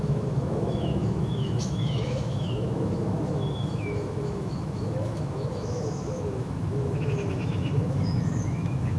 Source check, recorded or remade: remade